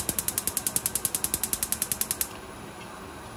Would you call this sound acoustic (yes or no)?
yes